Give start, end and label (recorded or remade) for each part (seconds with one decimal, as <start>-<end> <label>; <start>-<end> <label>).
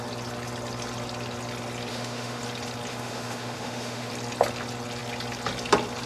0.0-1.9 recorded; 1.9-2.4 remade; 2.4-2.9 recorded; 2.9-4.1 remade; 4.1-6.1 recorded